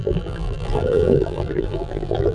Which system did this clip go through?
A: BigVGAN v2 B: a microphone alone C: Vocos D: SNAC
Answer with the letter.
A